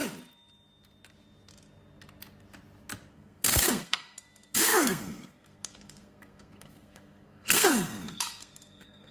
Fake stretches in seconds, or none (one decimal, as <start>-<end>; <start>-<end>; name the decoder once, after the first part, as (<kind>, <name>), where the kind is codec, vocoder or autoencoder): 3.1-9.1 (codec, SNAC)